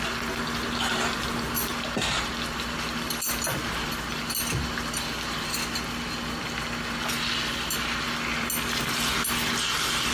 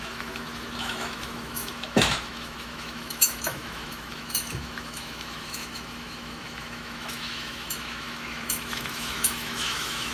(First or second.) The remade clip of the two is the second